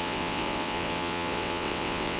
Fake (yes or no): yes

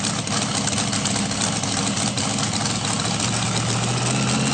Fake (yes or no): no